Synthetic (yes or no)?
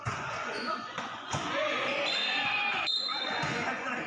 yes